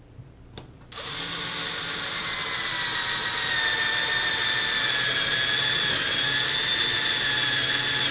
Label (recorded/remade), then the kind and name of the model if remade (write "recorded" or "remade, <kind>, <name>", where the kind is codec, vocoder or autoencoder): recorded